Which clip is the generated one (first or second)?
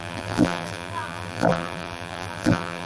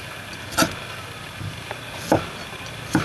first